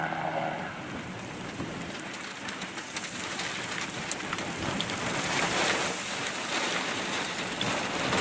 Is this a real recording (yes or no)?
no